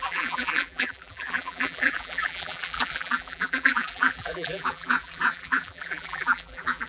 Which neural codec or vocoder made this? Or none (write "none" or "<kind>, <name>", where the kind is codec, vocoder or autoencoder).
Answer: vocoder, BigVGAN v2